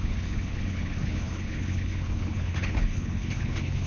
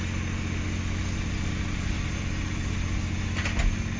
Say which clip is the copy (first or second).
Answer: first